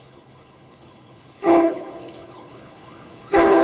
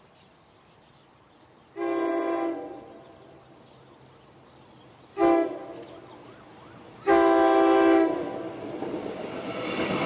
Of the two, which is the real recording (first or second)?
second